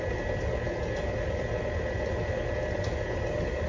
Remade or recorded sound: recorded